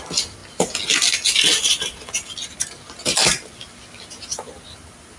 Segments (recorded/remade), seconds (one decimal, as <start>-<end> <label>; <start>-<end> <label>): 0.0-5.2 recorded